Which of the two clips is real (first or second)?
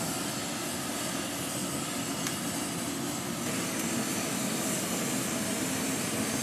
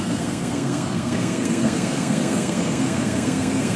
first